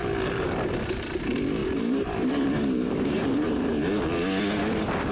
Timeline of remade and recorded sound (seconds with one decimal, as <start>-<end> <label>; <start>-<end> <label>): 0.0-1.6 recorded; 1.6-4.0 remade; 4.0-5.1 recorded